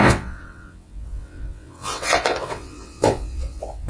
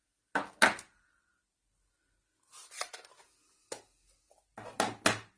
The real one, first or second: second